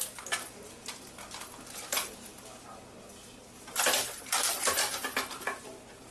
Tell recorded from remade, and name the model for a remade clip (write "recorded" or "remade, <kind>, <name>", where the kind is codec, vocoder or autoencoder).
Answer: recorded